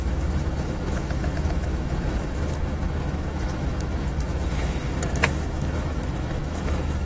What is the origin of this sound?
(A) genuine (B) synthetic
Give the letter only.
B